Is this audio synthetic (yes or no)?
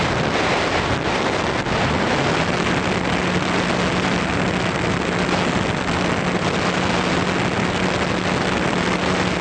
no